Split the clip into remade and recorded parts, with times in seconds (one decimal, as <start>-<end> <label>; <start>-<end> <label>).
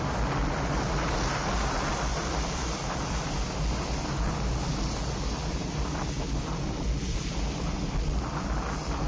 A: 0.0-2.1 recorded; 2.1-3.3 remade; 3.3-9.1 recorded